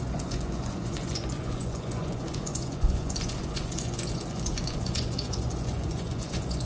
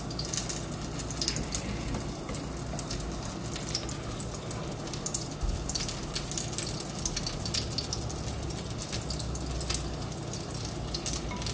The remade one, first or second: first